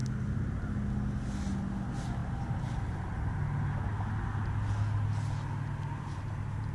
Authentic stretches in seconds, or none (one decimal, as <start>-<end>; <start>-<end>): 0.0-6.7